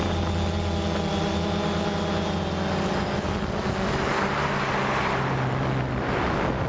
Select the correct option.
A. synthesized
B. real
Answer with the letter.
B